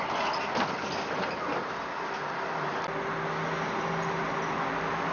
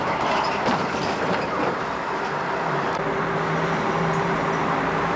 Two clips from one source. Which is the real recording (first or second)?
first